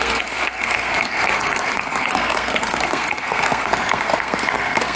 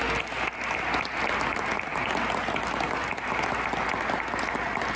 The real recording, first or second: second